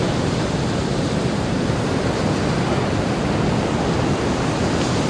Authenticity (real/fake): real